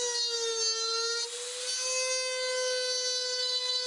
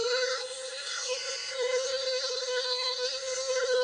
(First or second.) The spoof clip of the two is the second